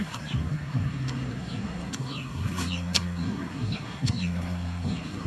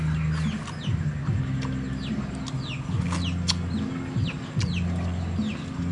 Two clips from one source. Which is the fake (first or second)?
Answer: first